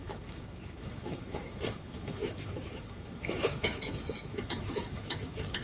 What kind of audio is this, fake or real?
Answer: fake